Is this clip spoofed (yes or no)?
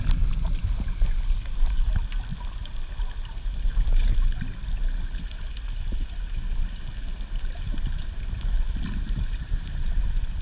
no